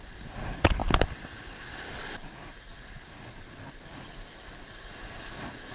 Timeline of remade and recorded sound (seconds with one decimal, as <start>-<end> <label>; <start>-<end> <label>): 0.0-5.7 recorded

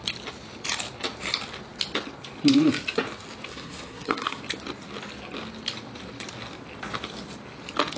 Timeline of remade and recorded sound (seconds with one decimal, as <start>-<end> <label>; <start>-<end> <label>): 0.0-3.5 recorded; 3.5-4.4 remade; 4.4-8.0 recorded

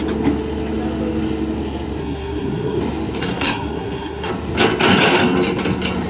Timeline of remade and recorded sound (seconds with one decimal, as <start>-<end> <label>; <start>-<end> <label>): 0.0-2.0 recorded; 2.0-2.8 remade; 2.8-3.2 recorded; 3.2-4.3 remade; 4.3-6.1 recorded

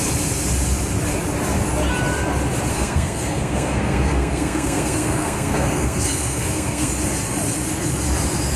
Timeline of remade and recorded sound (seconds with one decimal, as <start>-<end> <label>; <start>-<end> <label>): 0.0-2.7 recorded; 2.7-6.9 remade; 6.9-8.6 recorded

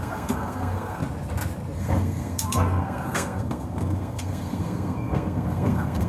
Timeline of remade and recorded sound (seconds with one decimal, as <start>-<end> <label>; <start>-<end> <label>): 0.0-1.0 remade; 1.0-1.8 recorded; 1.8-6.1 remade

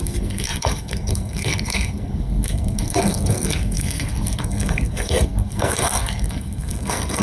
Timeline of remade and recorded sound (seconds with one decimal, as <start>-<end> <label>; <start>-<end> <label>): 0.0-7.2 remade

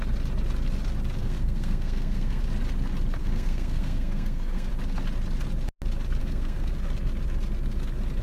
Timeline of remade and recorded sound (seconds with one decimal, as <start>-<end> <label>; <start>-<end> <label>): 0.0-1.2 recorded; 1.2-2.4 remade; 2.4-3.2 recorded; 3.2-4.7 remade; 4.7-6.2 recorded; 6.2-6.7 remade; 6.7-8.2 recorded